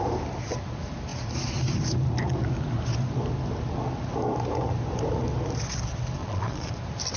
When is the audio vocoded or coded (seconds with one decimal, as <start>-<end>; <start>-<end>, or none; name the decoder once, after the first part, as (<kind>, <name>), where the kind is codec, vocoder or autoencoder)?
6.2-6.7 (vocoder, Vocos)